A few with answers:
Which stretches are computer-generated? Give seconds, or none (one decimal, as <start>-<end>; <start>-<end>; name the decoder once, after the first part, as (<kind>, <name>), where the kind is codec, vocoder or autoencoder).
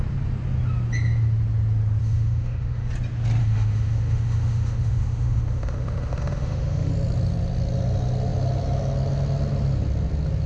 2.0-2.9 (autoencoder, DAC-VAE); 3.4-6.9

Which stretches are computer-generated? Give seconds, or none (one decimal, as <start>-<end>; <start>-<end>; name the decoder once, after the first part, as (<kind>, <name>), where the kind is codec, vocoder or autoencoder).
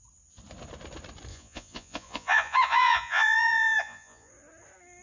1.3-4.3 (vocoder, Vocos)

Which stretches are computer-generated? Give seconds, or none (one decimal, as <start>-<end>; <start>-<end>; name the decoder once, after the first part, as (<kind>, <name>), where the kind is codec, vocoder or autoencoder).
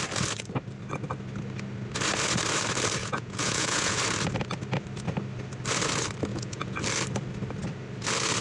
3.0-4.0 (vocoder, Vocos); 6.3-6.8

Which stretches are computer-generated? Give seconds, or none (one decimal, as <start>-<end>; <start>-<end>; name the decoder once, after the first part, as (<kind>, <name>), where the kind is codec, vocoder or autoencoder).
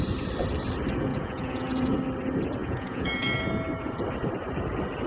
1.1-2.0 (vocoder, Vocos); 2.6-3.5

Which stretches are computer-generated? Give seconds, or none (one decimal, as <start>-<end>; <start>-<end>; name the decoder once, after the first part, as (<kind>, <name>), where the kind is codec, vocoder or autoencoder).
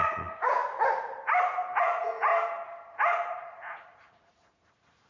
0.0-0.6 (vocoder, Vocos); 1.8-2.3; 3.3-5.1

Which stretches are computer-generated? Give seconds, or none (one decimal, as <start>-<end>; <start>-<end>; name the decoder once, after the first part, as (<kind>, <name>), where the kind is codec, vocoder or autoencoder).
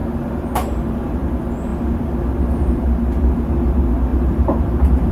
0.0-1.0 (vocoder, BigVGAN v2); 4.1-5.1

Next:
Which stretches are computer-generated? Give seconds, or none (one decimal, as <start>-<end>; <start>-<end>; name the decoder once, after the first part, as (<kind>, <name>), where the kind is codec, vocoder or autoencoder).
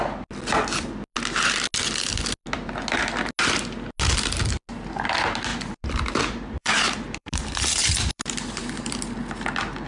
5.5-9.0 (vocoder, BigVGAN v2)